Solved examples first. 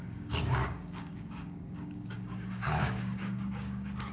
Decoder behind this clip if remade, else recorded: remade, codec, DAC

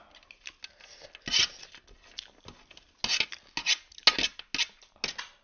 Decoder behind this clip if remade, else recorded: recorded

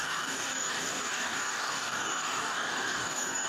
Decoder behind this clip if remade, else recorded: remade, codec, DAC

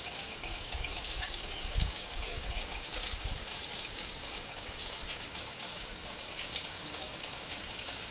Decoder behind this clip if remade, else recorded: remade, codec, DAC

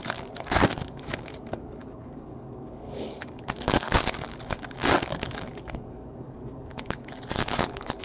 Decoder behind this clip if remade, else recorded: remade, codec, DAC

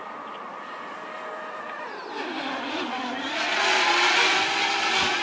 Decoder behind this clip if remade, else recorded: recorded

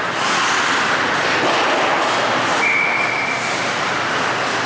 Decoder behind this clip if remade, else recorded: recorded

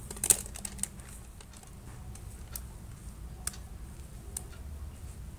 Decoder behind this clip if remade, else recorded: recorded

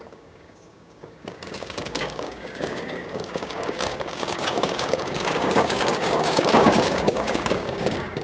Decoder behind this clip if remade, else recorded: remade, codec, DAC